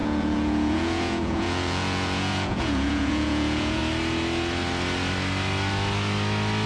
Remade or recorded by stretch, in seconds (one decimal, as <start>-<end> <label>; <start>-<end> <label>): 0.0-3.8 remade; 3.8-6.7 recorded